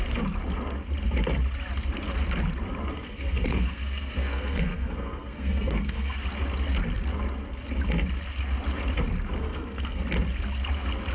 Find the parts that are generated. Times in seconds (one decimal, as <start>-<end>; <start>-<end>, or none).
2.9-6.2; 9.4-10.0